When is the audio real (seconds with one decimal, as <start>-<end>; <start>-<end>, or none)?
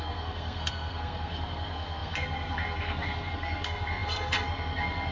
none